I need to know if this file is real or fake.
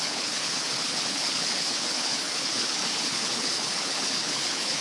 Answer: fake